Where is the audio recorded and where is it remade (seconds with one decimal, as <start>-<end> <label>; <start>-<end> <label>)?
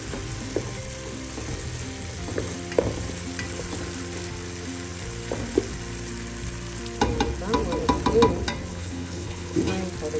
0.0-8.7 recorded; 8.7-9.7 remade; 9.7-10.2 recorded